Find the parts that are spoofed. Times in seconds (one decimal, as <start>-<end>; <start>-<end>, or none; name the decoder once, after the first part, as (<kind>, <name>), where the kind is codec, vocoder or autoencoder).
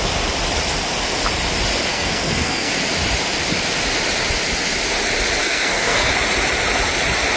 1.9-2.8 (codec, SNAC); 5.4-6.1